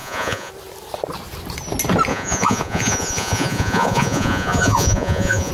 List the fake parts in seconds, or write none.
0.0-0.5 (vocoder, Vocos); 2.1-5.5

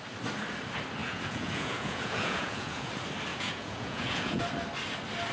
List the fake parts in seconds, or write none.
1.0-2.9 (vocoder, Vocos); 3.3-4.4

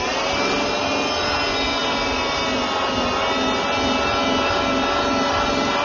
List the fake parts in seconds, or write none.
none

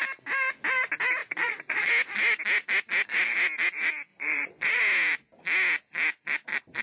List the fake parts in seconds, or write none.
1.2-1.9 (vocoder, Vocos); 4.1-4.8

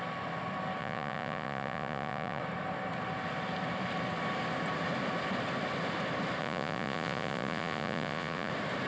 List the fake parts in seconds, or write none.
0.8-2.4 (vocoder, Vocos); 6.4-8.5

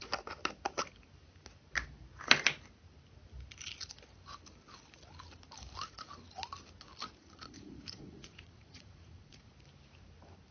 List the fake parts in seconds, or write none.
7.2-9.5 (vocoder, Vocos)

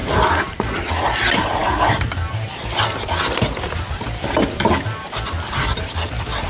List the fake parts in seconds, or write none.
none

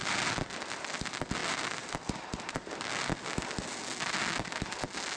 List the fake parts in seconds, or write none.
none